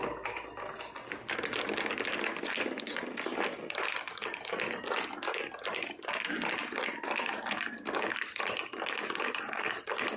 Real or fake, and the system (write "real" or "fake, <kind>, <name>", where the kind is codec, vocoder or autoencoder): real